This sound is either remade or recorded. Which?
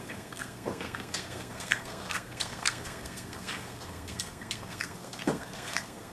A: remade